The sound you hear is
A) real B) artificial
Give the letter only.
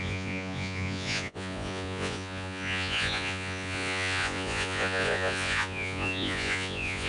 B